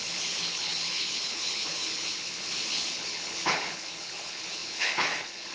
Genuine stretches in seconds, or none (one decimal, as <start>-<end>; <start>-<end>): none